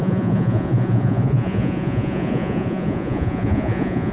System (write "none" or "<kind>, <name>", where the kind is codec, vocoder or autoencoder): vocoder, Vocos